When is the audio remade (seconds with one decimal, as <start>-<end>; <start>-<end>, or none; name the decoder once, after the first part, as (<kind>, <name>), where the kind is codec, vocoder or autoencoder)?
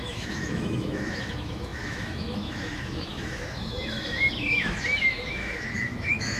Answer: 0.0-6.4 (autoencoder, DAC-VAE)